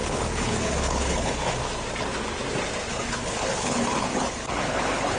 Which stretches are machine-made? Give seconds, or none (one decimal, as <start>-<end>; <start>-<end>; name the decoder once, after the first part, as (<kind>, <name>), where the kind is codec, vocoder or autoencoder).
0.0-1.6 (codec, HILCodec); 2.9-5.2